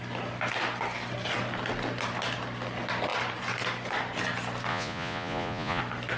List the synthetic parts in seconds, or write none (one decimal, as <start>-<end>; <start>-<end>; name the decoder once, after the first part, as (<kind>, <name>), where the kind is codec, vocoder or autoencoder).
4.7-5.8 (vocoder, Vocos)